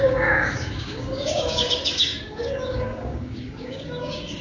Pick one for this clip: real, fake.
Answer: fake